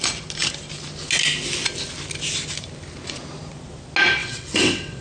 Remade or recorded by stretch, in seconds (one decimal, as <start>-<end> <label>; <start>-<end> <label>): 0.0-4.2 recorded; 4.2-5.0 remade